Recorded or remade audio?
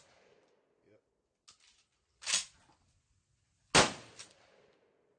recorded